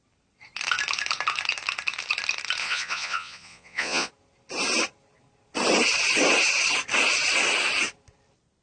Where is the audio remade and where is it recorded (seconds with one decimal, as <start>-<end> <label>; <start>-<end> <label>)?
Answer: 0.0-2.6 recorded; 2.6-4.1 remade; 4.1-8.6 recorded